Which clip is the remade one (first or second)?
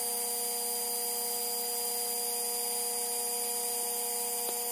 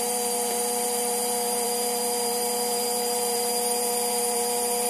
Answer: second